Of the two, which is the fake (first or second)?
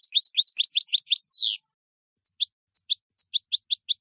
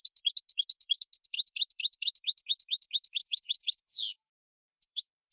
second